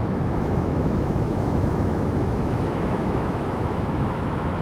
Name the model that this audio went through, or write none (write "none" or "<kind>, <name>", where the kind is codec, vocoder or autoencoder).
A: autoencoder, DAC-VAE